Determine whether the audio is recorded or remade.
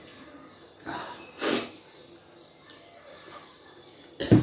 recorded